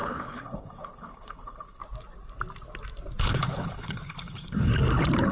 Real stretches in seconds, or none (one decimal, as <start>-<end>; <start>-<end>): 1.8-3.2; 4.7-5.3